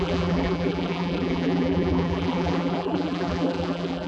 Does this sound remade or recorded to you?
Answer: remade